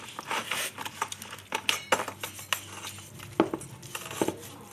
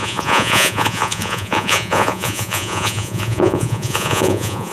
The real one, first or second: first